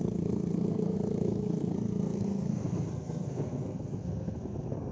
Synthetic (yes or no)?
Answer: yes